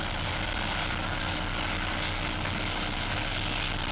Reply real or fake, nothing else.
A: real